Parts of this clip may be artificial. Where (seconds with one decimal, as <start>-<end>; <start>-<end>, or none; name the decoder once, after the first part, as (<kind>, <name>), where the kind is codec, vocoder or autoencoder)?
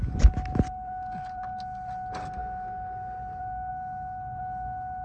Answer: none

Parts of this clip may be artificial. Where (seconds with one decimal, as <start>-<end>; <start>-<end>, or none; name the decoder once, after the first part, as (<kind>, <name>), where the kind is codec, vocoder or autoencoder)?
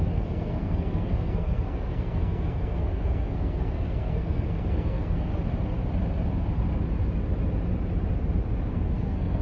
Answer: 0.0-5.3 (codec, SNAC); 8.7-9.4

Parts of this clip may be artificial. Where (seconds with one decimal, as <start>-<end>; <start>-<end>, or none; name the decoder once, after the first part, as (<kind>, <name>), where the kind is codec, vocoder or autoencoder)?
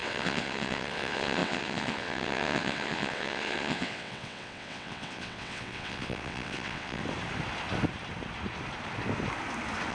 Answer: 0.0-7.0 (vocoder, WaveNeXt)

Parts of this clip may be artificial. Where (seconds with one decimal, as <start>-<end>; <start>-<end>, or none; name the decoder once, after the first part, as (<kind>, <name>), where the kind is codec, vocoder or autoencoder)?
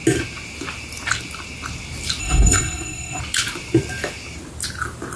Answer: 2.2-3.2 (codec, SNAC)